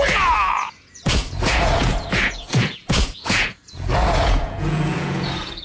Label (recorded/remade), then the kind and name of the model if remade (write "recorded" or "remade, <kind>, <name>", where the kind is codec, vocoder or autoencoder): remade, vocoder, Vocos